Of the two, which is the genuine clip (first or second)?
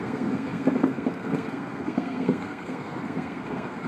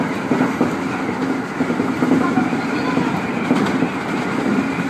second